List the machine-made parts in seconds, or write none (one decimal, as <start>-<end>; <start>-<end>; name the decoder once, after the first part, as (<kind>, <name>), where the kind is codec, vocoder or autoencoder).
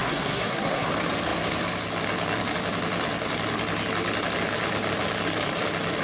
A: 0.0-0.9 (codec, SNAC)